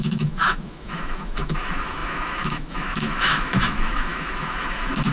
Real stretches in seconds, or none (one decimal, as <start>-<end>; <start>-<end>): none